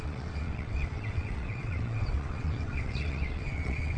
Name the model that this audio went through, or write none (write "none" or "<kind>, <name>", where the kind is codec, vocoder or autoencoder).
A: vocoder, WaveNeXt